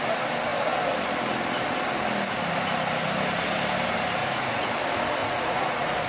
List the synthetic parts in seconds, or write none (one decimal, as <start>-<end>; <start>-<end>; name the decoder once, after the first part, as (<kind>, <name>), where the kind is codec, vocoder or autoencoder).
4.2-4.7 (vocoder, Vocos); 5.2-6.1